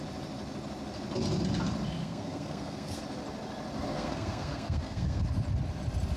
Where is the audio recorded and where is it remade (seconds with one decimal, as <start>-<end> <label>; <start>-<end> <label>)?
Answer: 0.0-2.0 recorded; 2.0-3.0 remade; 3.0-3.9 recorded; 3.9-5.2 remade; 5.2-6.2 recorded